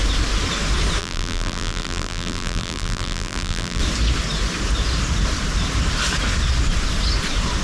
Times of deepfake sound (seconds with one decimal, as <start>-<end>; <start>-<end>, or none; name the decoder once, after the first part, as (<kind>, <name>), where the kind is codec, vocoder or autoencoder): 1.0-3.8 (vocoder, BigVGAN v2)